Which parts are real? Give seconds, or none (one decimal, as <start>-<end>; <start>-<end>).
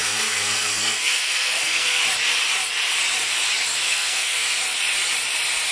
2.0-3.8; 4.6-5.7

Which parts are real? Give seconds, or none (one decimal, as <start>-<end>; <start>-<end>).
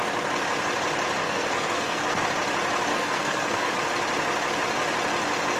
0.0-1.2; 2.2-2.9; 3.7-5.6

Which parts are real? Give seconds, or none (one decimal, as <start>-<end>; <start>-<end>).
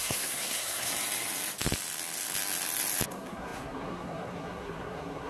0.9-3.1